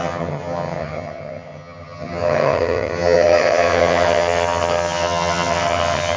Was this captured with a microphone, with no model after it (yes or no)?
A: no